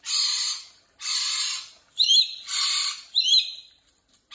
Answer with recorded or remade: recorded